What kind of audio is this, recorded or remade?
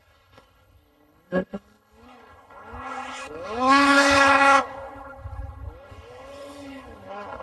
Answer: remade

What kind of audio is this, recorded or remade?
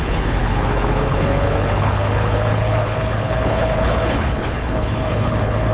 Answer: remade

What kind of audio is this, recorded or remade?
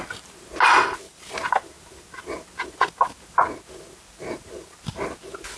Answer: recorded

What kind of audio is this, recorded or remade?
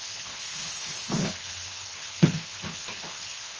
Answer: remade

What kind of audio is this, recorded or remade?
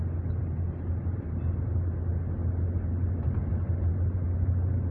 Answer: recorded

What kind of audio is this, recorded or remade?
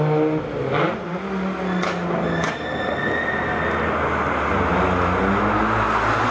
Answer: recorded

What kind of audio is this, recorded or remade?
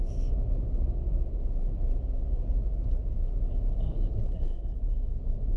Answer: recorded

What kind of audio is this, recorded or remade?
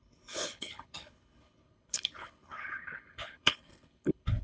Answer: remade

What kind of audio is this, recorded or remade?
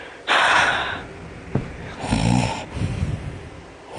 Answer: recorded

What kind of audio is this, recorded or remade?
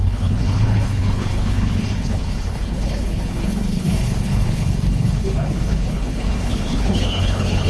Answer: remade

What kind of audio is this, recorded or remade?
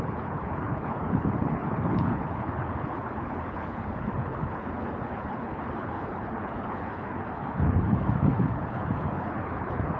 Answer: remade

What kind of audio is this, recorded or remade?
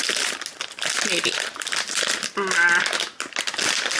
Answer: recorded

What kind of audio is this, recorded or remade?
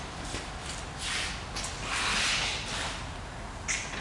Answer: recorded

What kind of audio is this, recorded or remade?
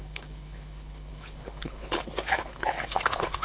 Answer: remade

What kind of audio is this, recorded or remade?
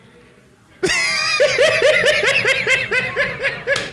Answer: recorded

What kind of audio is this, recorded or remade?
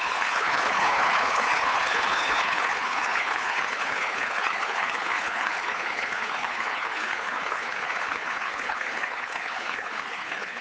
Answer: remade